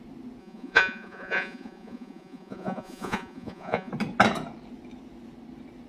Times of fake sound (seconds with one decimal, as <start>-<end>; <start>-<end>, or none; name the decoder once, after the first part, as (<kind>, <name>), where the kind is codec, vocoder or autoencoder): 0.4-3.9 (vocoder, Vocos)